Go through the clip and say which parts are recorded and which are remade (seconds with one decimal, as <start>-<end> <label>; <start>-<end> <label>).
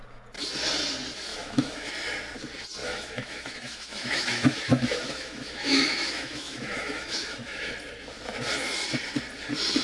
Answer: 0.0-1.3 recorded; 1.3-1.9 remade; 1.9-2.8 recorded; 2.8-7.7 remade; 7.7-9.8 recorded